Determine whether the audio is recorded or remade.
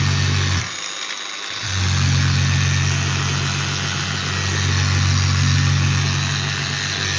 recorded